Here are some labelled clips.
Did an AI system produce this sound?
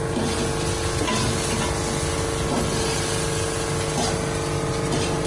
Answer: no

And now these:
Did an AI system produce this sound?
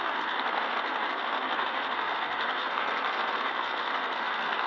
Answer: yes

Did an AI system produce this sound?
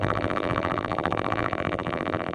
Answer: yes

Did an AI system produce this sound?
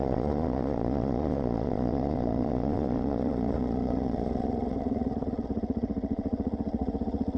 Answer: yes